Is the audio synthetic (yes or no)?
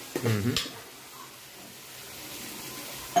no